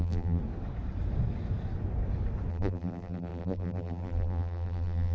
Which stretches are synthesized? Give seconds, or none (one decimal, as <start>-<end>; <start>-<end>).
0.0-0.4; 2.5-5.1